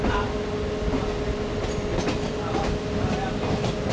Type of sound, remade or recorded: recorded